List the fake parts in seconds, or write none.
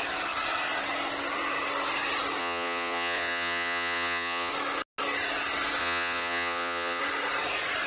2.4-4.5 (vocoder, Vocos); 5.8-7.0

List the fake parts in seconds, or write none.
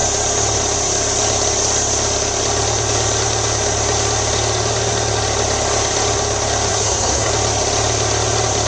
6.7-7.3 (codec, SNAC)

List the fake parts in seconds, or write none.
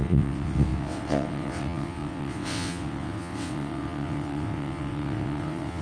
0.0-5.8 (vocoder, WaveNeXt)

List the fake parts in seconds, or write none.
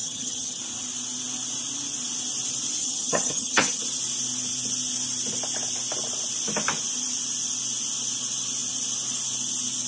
0.0-0.6 (vocoder, HiFi-GAN); 2.8-3.8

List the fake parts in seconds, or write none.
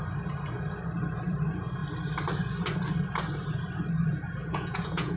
4.4-5.2 (vocoder, Vocos)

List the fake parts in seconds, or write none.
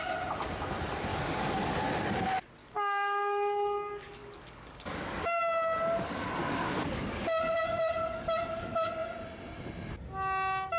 1.1-1.8 (codec, DAC); 2.6-5.4; 6.4-8.9